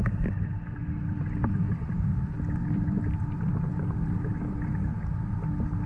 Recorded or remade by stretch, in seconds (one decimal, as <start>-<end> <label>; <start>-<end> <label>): 0.0-5.9 recorded